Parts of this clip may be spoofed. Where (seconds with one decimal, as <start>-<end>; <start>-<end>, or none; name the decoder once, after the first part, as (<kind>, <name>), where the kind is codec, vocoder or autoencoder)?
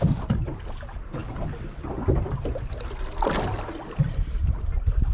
none